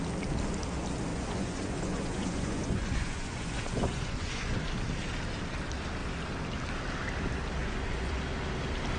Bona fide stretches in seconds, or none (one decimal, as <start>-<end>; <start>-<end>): 0.0-1.1; 4.6-7.6; 8.2-9.0